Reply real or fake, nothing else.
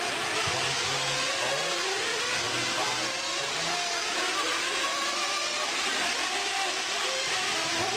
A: real